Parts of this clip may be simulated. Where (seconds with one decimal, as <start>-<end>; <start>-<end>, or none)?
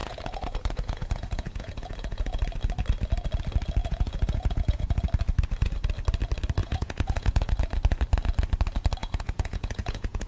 0.0-2.4; 3.8-5.0; 6.6-7.6; 9.0-10.3